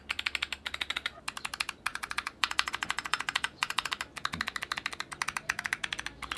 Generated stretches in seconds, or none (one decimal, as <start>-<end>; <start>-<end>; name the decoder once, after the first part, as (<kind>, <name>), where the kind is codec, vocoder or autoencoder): 1.9-3.9 (vocoder, Vocos)